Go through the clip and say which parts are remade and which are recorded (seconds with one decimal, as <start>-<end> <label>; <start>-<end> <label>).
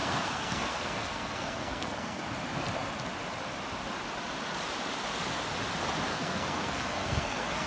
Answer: 0.0-2.2 remade; 2.2-6.1 recorded; 6.1-7.7 remade